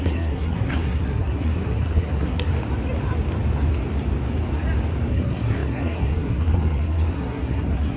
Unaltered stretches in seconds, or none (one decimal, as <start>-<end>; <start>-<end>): 2.5-5.1